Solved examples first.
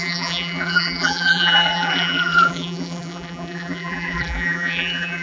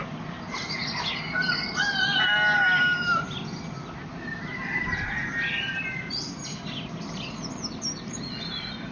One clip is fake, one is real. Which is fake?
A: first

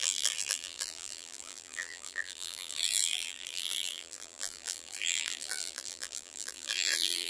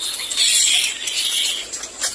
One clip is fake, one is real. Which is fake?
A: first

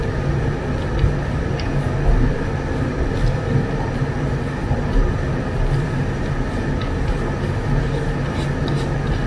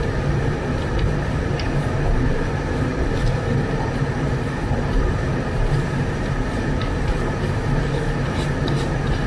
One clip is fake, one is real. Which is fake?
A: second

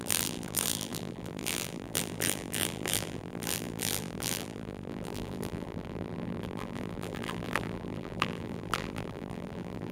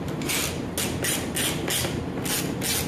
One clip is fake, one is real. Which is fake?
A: first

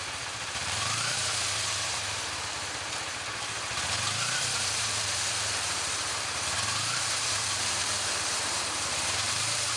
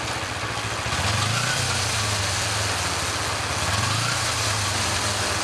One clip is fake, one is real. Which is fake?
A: first